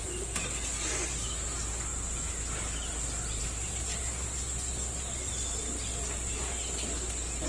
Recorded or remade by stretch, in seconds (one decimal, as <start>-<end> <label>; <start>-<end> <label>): 0.0-7.5 recorded